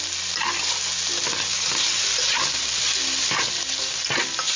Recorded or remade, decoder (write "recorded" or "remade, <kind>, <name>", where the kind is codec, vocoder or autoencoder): recorded